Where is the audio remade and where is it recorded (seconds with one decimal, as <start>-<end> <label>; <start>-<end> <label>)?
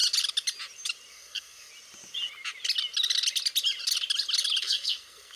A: 0.0-1.1 recorded; 1.1-1.7 remade; 1.7-4.6 recorded; 4.6-5.4 remade